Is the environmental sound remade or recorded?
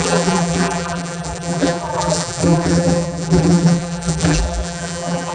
remade